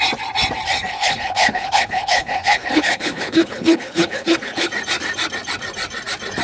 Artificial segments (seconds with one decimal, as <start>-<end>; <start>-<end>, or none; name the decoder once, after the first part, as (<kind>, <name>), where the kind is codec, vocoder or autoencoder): 0.9-4.7 (codec, HILCodec)